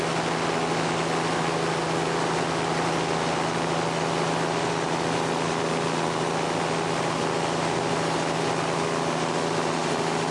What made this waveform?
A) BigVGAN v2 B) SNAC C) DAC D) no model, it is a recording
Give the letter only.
D